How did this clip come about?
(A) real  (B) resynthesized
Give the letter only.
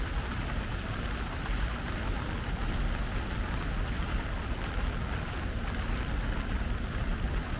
A